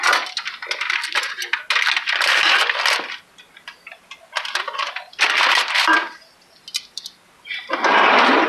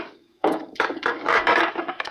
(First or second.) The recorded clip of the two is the first